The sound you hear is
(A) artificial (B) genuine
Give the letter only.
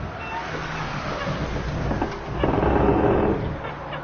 B